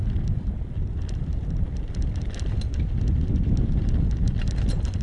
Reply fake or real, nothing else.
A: real